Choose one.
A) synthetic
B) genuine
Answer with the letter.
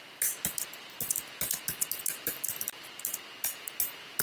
B